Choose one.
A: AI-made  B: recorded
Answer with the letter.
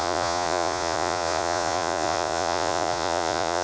A